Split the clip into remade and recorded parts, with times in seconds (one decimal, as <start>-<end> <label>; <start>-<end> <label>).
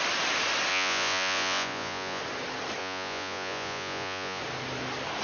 0.0-0.7 recorded; 0.7-2.2 remade; 2.2-2.8 recorded; 2.8-4.4 remade; 4.4-5.2 recorded